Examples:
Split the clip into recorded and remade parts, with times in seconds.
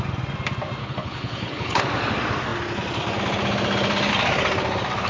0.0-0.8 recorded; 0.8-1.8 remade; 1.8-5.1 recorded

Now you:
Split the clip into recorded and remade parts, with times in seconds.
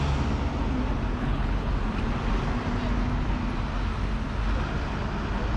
0.0-1.2 recorded; 1.2-1.7 remade; 1.7-5.6 recorded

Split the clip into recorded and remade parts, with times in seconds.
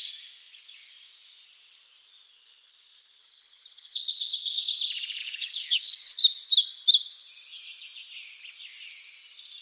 0.0-2.3 recorded; 2.3-4.6 remade; 4.6-5.2 recorded; 5.2-6.2 remade; 6.2-9.6 recorded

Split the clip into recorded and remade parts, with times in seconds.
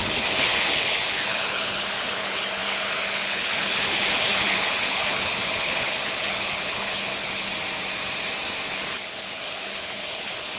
0.0-7.5 remade; 7.5-8.7 recorded; 8.7-10.6 remade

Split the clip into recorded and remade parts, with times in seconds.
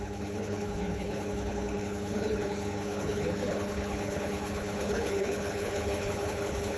0.0-6.8 remade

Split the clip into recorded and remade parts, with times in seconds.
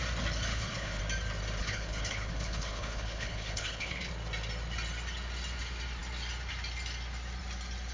0.0-0.5 recorded; 0.5-1.0 remade; 1.0-1.6 recorded; 1.6-4.1 remade; 4.1-7.9 recorded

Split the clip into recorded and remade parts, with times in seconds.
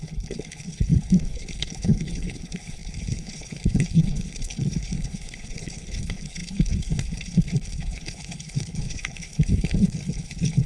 0.0-10.7 remade